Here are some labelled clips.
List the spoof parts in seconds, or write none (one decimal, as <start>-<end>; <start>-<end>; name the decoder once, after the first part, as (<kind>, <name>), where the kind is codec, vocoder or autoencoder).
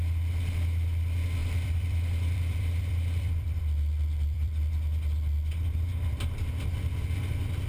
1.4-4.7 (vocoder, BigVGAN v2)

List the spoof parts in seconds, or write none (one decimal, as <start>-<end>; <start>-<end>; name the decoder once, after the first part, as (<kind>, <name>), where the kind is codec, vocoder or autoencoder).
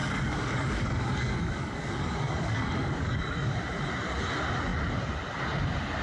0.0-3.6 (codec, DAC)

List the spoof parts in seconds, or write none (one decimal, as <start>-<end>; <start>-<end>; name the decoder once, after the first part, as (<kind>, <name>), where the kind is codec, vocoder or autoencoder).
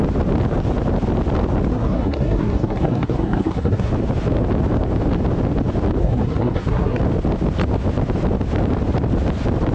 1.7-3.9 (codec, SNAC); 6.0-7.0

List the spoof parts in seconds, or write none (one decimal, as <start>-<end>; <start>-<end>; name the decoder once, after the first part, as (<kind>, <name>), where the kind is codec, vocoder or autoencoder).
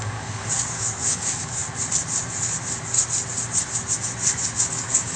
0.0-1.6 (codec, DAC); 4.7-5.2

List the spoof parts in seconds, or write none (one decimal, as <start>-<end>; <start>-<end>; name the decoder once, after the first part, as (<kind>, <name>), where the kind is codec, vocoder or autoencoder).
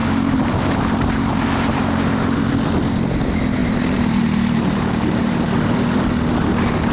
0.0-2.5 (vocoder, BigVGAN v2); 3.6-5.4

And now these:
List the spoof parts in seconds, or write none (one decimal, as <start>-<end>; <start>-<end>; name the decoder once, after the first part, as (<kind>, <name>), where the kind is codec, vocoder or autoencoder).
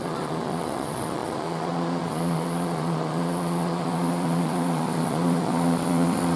0.0-6.4 (vocoder, Vocos)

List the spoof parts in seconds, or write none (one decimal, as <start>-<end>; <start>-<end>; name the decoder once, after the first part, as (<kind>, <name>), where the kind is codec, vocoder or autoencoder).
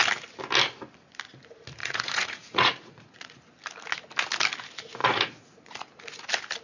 1.8-3.4 (vocoder, Vocos); 5.0-5.7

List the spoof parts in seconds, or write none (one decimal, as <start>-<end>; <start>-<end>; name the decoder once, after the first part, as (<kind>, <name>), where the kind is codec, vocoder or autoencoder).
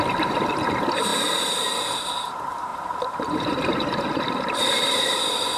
0.0-1.1 (vocoder, BigVGAN v2); 2.1-5.6